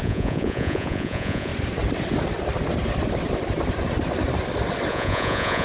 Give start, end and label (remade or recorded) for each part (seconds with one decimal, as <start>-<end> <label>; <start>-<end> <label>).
0.0-1.5 remade; 1.5-4.9 recorded; 4.9-5.6 remade